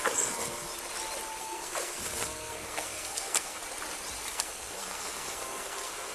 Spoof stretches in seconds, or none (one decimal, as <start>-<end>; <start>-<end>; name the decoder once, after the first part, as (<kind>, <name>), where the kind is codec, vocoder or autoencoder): 0.0-0.7 (codec, SNAC); 1.4-3.6; 4.3-6.1